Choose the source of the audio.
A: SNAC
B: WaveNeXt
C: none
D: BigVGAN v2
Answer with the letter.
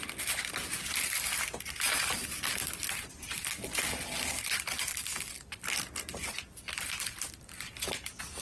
C